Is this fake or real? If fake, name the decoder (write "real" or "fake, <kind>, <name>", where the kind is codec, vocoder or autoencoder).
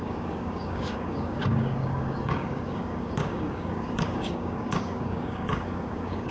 fake, codec, DAC